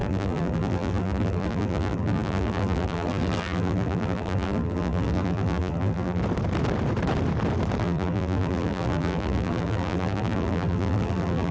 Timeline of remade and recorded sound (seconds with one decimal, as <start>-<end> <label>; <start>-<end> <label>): 0.0-6.2 remade; 6.2-7.8 recorded; 7.8-11.5 remade